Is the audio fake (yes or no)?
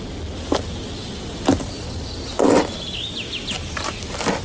no